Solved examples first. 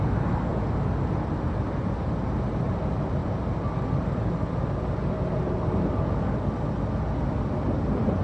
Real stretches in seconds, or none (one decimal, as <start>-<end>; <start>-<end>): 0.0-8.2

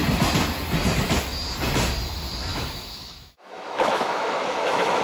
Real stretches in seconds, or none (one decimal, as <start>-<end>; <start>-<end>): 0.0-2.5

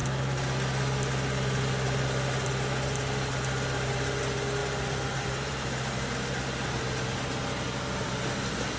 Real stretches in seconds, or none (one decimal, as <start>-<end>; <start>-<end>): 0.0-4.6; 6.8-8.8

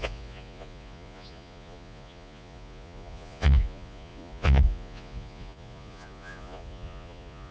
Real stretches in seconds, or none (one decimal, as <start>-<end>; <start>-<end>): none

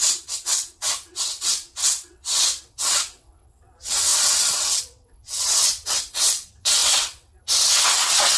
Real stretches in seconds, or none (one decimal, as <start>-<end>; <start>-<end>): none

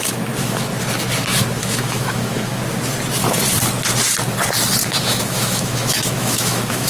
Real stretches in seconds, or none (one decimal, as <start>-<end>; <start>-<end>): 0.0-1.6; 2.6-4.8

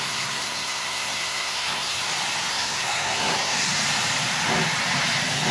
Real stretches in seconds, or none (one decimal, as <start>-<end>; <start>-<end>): 2.0-2.5; 3.7-5.5